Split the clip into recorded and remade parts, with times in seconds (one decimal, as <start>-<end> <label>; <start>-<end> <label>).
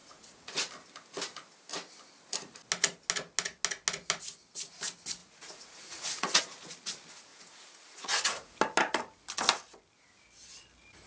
0.0-0.7 remade; 0.7-5.2 recorded; 5.2-6.4 remade; 6.4-7.3 recorded; 7.3-8.5 remade; 8.5-11.1 recorded